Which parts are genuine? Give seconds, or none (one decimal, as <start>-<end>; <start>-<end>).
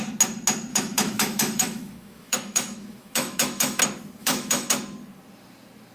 0.0-0.7; 3.8-4.2; 4.7-5.9